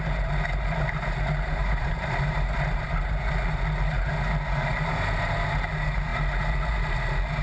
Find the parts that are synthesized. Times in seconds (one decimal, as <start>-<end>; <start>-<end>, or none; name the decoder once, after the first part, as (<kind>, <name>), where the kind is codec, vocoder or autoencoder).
1.6-3.3 (vocoder, BigVGAN v2)